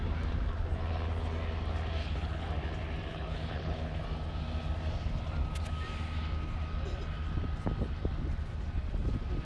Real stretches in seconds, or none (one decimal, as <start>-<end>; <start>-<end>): 0.0-2.0; 2.5-3.1; 4.0-9.4